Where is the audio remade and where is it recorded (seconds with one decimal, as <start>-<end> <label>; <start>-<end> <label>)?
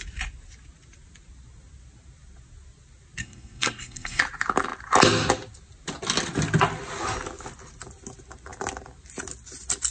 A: 0.0-3.2 recorded; 3.2-4.2 remade; 4.2-9.9 recorded